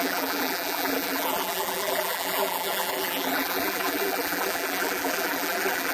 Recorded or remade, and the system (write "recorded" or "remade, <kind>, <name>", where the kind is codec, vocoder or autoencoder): remade, vocoder, BigVGAN v2